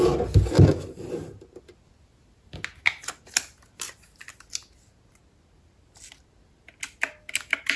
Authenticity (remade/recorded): recorded